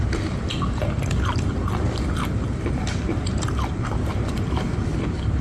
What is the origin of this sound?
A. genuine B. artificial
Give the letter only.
B